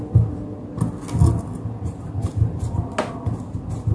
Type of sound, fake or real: real